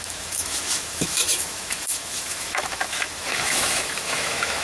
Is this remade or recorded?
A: remade